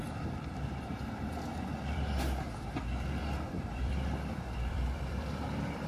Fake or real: fake